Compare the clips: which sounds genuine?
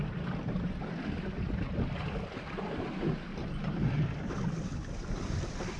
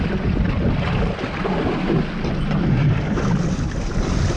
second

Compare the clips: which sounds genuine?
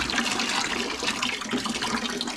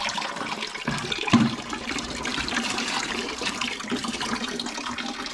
first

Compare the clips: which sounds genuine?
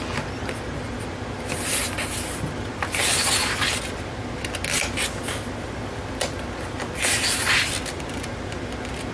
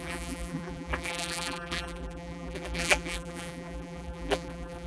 first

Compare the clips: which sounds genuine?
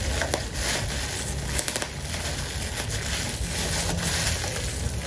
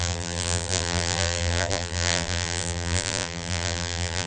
first